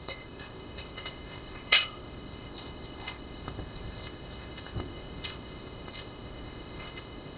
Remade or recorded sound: remade